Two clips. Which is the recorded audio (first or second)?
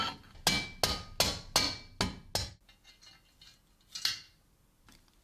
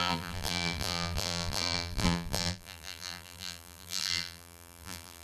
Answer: first